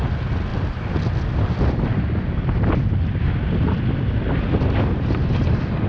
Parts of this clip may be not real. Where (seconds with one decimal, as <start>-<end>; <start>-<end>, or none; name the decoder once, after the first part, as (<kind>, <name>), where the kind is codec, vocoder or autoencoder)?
none